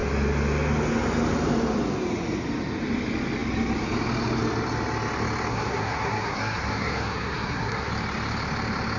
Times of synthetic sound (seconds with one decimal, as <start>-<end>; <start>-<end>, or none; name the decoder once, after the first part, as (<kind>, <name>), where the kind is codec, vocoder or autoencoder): 5.5-7.9 (codec, SNAC)